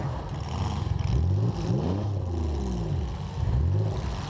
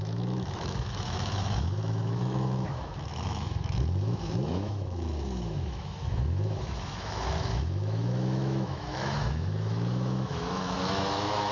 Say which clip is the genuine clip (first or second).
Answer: first